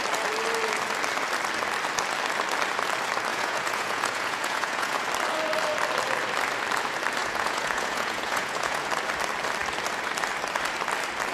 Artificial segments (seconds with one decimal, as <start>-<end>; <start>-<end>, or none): 3.3-5.0; 7.2-8.9